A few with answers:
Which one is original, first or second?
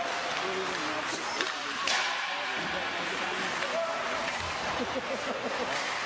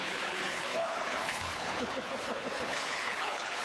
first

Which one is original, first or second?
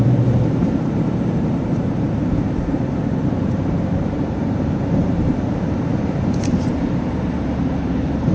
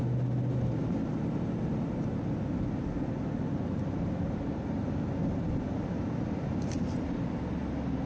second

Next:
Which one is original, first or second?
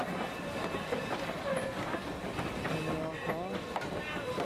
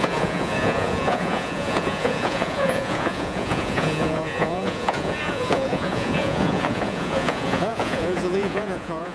first